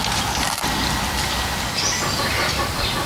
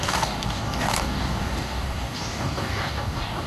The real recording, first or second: first